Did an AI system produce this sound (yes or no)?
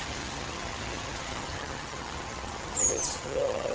yes